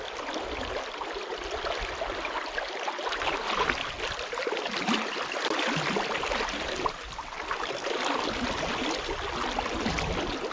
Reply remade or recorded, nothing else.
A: recorded